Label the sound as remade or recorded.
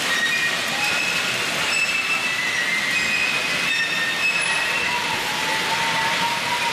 recorded